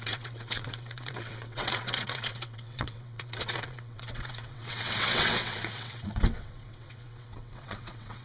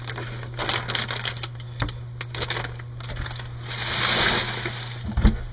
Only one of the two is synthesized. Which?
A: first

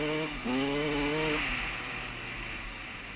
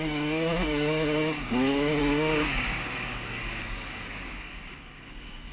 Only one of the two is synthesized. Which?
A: second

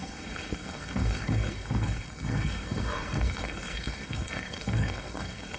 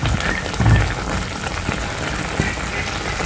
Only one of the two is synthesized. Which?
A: first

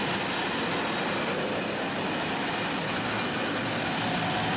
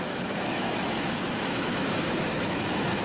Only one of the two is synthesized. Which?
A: second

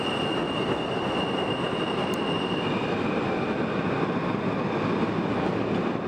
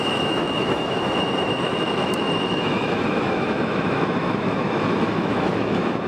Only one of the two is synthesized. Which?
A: second